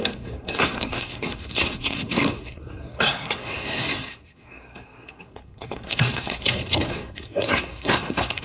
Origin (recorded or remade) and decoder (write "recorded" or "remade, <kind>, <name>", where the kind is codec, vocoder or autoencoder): remade, codec, SNAC